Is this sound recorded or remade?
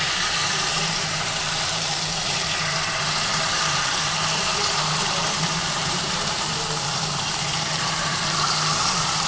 remade